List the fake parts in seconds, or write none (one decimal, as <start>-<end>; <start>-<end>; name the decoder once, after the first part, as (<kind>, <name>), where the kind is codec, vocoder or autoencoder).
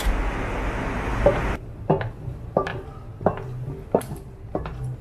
1.1-1.9 (vocoder, BigVGAN v2)